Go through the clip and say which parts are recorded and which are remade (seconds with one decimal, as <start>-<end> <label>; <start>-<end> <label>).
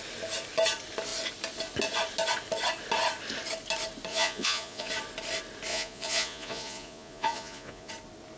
0.0-4.1 recorded; 4.1-4.9 remade; 4.9-5.7 recorded; 5.7-7.9 remade; 7.9-8.4 recorded